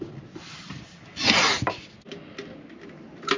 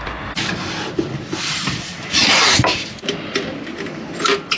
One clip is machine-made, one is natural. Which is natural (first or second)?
first